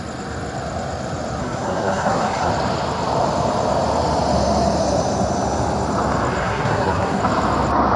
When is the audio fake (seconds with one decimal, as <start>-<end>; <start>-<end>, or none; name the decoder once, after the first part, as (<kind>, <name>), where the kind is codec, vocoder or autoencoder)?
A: 1.4-2.5 (codec, SNAC); 6.4-7.2